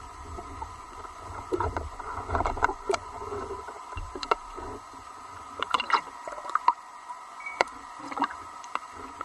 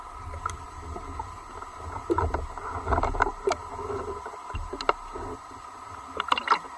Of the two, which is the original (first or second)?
second